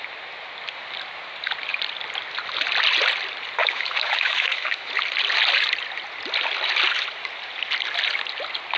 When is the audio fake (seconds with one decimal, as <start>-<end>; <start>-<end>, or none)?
3.6-4.9